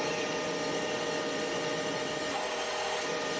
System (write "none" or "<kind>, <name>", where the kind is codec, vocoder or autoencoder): none